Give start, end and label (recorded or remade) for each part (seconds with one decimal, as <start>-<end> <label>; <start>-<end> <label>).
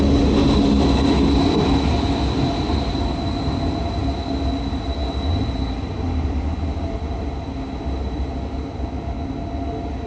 0.0-10.1 recorded